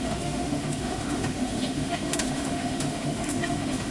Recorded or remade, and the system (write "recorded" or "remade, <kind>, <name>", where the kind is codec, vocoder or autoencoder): remade, autoencoder, DAC-VAE